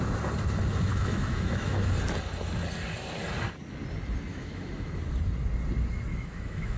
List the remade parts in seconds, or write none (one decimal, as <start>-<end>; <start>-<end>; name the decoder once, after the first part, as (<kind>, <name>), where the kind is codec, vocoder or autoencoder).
0.9-1.9 (autoencoder, DAC-VAE); 4.3-5.0; 6.1-6.8